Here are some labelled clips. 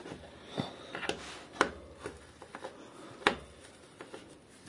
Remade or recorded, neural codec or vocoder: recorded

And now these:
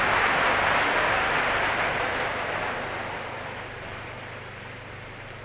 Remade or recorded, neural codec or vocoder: recorded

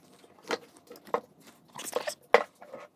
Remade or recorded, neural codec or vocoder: recorded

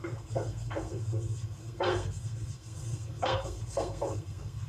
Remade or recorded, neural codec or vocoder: remade, codec, SNAC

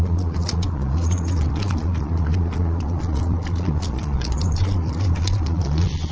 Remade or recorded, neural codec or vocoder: remade, vocoder, Vocos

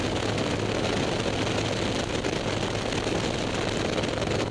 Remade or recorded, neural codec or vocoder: recorded